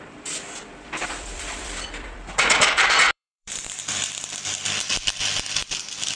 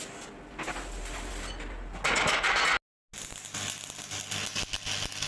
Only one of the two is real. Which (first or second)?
second